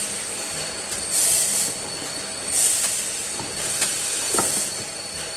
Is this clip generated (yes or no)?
no